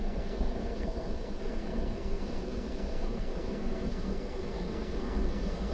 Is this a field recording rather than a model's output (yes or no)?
no